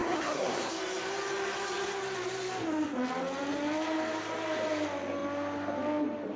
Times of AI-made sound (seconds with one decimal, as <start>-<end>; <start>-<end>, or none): 0.0-0.7